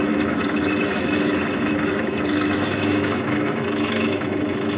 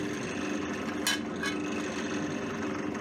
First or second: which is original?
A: second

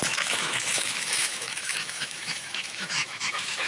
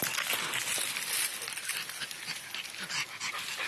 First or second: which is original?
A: second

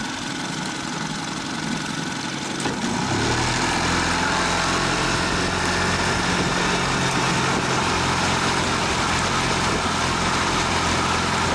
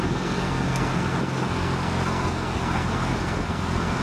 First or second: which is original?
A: first